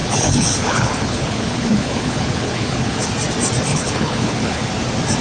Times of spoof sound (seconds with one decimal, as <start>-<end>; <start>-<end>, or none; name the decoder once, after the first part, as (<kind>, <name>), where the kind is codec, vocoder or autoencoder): 0.0-3.1 (codec, HILCodec); 3.7-4.7